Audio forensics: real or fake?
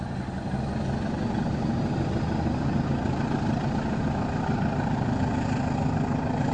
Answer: real